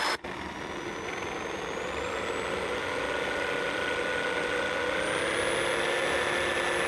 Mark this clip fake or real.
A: real